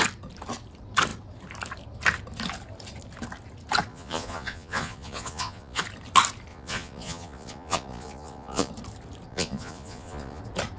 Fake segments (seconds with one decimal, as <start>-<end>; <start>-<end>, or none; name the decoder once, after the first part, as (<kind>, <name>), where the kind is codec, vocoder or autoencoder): 3.9-5.8 (vocoder, Vocos); 6.5-8.7; 9.3-10.4